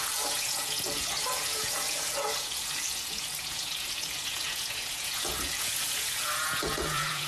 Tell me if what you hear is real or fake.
fake